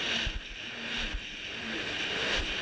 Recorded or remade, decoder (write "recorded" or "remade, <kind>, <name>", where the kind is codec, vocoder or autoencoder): recorded